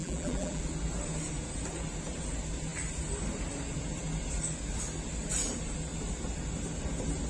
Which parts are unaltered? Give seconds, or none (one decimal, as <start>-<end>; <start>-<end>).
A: 0.6-7.3